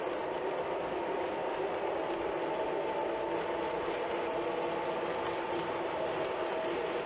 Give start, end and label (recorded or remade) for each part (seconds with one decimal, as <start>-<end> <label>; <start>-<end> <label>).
0.0-7.1 recorded